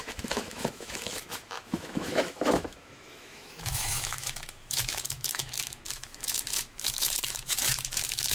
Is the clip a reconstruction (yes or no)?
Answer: yes